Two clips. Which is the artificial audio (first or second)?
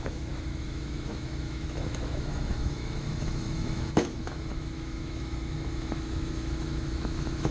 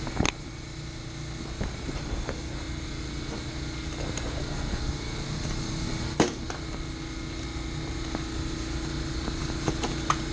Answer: first